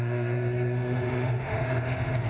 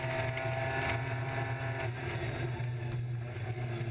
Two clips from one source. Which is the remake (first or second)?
first